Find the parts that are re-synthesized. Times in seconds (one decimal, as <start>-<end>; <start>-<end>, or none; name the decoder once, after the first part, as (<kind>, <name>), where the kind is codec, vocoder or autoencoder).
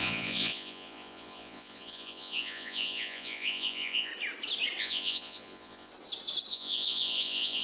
0.0-4.1 (vocoder, Vocos); 4.8-5.9; 6.5-7.6